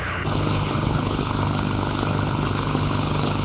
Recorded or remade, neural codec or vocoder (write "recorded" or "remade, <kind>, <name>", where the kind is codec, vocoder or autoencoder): remade, codec, HILCodec